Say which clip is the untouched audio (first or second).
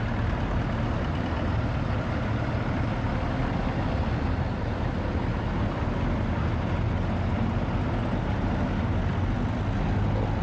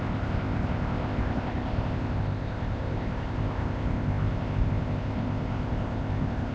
first